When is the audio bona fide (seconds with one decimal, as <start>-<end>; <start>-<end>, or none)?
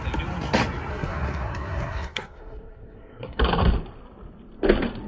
0.0-0.9; 3.4-5.1